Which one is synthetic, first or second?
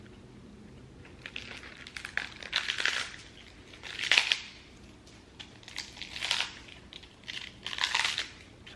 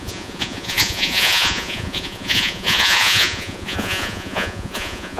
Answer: second